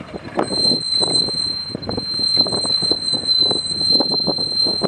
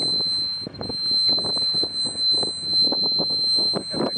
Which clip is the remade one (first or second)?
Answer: first